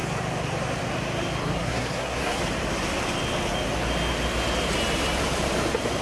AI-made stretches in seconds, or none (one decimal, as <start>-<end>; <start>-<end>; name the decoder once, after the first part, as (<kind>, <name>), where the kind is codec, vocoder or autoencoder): 1.4-2.4 (codec, SNAC)